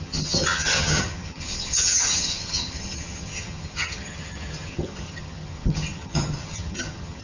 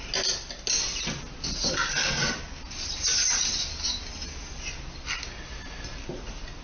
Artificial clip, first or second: first